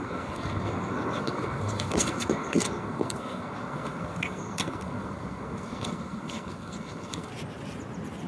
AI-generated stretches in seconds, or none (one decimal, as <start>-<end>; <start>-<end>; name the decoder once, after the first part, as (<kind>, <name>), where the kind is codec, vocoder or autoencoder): 0.0-7.3 (codec, SNAC)